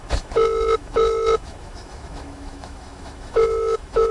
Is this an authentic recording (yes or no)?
no